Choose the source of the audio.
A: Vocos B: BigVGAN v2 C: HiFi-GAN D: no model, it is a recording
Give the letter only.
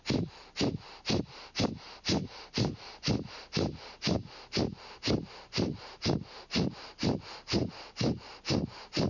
D